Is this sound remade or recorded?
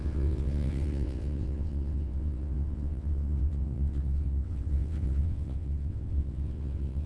remade